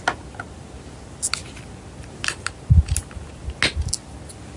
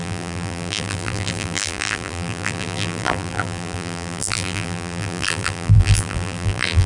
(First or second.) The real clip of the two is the first